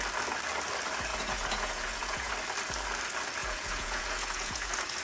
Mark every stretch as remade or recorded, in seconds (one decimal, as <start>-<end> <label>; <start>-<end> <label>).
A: 0.0-1.1 recorded; 1.1-2.3 remade; 2.3-3.4 recorded; 3.4-5.0 remade